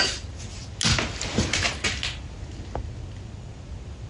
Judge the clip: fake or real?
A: real